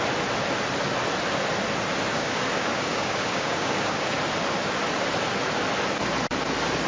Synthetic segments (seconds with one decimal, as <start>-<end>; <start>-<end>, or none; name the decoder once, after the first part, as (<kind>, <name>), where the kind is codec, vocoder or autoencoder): 2.1-4.1 (codec, DAC)